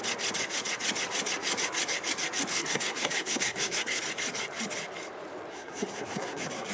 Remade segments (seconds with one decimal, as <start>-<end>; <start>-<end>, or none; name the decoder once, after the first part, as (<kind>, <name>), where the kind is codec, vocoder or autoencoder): 2.5-4.0 (codec, SNAC); 5.5-6.7